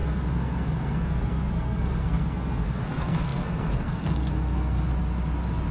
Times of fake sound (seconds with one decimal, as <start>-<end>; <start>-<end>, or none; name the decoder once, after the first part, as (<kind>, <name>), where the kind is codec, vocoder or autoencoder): 0.0-4.9 (codec, SNAC)